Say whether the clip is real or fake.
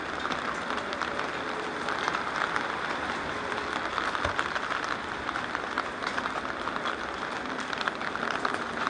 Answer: real